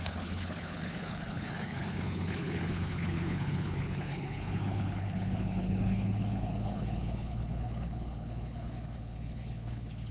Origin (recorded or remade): remade